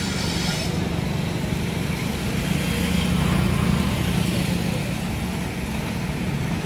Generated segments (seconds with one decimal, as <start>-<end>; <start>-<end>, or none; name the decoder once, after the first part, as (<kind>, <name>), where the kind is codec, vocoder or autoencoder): none